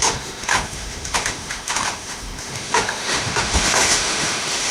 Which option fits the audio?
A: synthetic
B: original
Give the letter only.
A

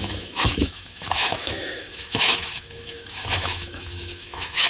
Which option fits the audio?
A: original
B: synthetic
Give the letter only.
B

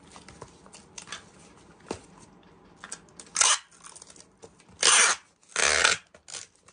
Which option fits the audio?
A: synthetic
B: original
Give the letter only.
B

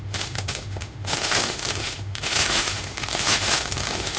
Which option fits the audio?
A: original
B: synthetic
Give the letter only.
B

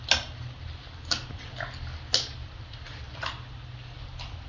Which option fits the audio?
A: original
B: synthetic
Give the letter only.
A